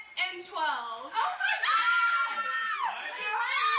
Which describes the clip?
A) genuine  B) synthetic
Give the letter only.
A